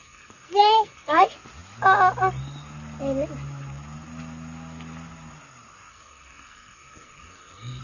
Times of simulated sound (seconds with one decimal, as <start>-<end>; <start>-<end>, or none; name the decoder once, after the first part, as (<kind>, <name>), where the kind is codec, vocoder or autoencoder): 0.0-1.2 (codec, SNAC); 5.9-7.8